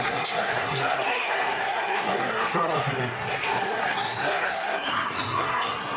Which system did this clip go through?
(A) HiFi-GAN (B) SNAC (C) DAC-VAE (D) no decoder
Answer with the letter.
B